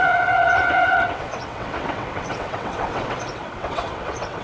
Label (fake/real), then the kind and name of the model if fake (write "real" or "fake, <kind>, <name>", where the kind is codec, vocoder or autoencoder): fake, vocoder, WaveNeXt